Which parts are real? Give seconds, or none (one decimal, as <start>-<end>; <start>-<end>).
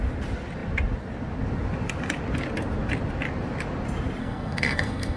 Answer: 0.0-4.2